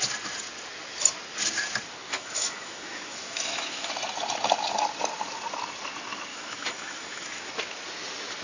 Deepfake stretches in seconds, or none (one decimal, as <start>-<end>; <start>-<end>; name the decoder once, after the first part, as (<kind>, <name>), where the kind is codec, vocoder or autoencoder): 2.1-3.9 (autoencoder, DAC-VAE); 6.3-7.5